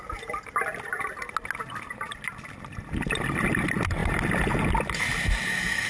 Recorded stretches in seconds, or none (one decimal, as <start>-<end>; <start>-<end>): 0.7-2.1; 4.0-4.7